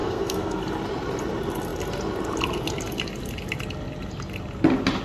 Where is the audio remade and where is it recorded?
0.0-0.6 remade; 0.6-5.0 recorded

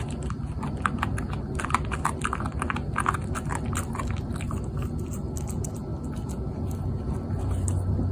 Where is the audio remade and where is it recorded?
0.0-8.1 recorded

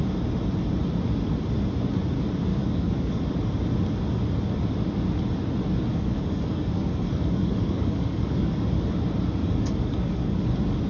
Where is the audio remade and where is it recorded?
0.0-2.5 recorded; 2.5-3.2 remade; 3.2-5.9 recorded; 5.9-8.5 remade; 8.5-9.4 recorded; 9.4-10.4 remade; 10.4-10.9 recorded

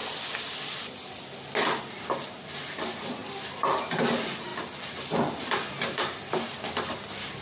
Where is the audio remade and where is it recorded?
0.0-3.2 recorded; 3.2-3.8 remade; 3.8-4.5 recorded; 4.5-5.3 remade; 5.3-7.4 recorded

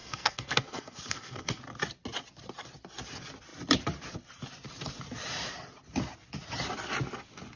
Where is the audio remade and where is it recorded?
0.0-1.6 remade; 1.6-7.6 recorded

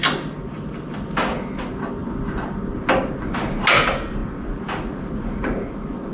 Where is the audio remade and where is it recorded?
0.0-6.1 recorded

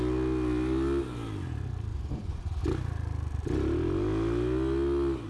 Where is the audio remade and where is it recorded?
0.0-1.9 recorded; 1.9-2.6 remade; 2.6-5.3 recorded

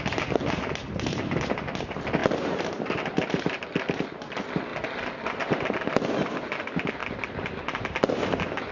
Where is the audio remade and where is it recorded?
0.0-8.7 recorded